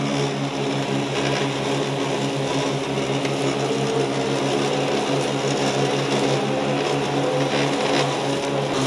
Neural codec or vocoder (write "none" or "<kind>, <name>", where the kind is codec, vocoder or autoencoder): none